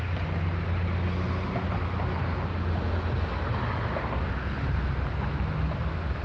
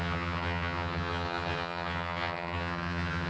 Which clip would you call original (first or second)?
first